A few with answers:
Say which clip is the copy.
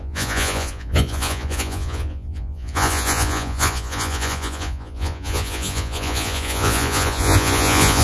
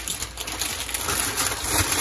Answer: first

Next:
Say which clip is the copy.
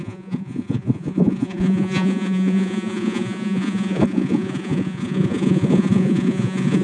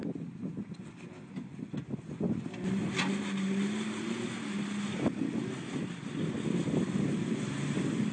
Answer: first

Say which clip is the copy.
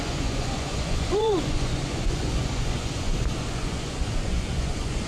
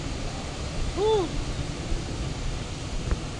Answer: first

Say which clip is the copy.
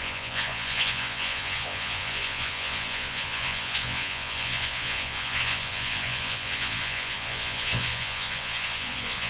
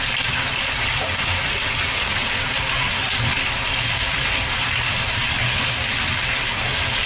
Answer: first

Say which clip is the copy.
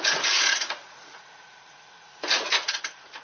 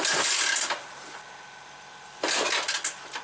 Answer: first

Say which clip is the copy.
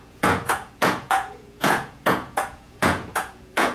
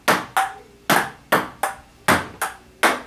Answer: first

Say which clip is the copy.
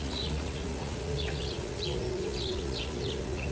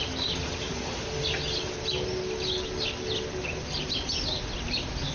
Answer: first